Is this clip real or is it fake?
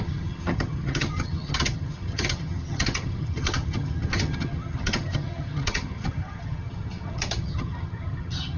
fake